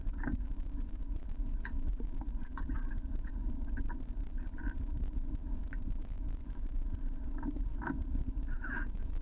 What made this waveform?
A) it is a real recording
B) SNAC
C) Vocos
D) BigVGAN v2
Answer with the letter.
D